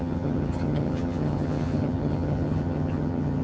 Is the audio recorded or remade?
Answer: remade